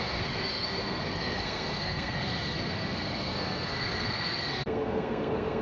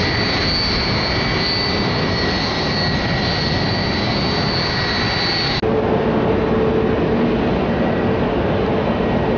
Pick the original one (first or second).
second